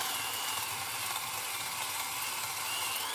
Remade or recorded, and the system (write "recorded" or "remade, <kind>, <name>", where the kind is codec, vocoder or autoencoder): recorded